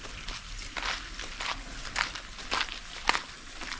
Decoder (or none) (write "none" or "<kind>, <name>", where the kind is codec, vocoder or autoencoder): none